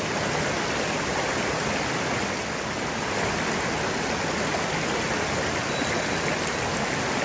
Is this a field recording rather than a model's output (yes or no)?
yes